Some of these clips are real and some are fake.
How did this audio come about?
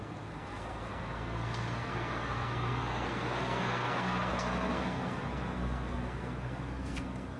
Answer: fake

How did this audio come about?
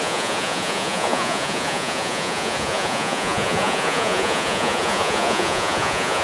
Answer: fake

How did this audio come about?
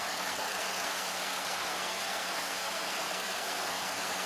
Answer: fake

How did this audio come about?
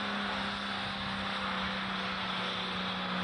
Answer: real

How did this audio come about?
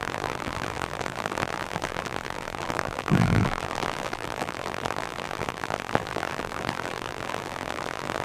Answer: fake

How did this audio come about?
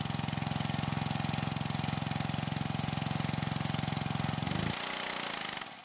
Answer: real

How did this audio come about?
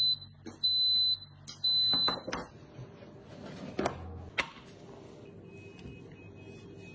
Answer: real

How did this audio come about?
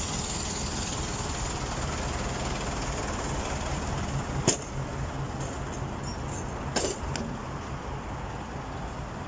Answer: real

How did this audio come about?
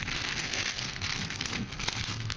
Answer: fake